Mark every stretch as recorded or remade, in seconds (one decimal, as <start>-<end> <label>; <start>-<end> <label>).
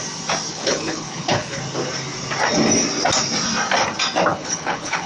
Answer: 0.0-0.5 recorded; 0.5-1.6 remade; 1.6-4.3 recorded; 4.3-5.1 remade